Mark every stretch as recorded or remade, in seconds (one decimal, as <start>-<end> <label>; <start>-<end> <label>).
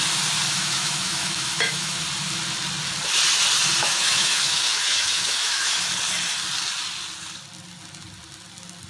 0.0-0.5 recorded; 0.5-2.0 remade; 2.0-3.8 recorded; 3.8-5.9 remade; 5.9-8.9 recorded